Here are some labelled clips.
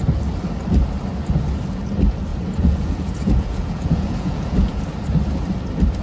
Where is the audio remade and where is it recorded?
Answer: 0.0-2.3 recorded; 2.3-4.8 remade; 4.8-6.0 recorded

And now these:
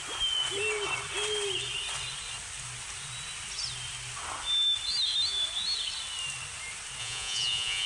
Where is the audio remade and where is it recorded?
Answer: 0.0-7.0 recorded; 7.0-7.9 remade

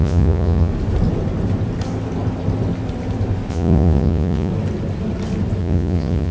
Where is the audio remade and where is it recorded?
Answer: 0.0-0.7 remade; 0.7-3.5 recorded; 3.5-4.5 remade; 4.5-5.6 recorded; 5.6-6.3 remade

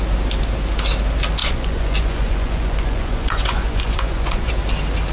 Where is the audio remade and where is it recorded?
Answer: 0.0-1.4 recorded; 1.4-4.5 remade; 4.5-5.1 recorded

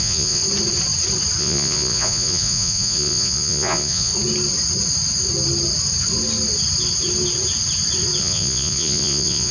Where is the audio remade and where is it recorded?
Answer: 0.0-0.4 remade; 0.4-1.4 recorded; 1.4-4.1 remade; 4.1-8.2 recorded; 8.2-9.5 remade

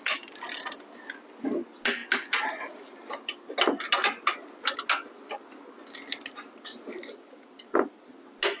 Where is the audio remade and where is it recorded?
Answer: 0.0-8.6 recorded

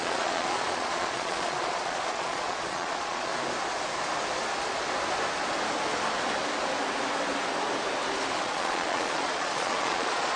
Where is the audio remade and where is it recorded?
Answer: 0.0-3.3 remade; 3.3-8.4 recorded; 8.4-10.4 remade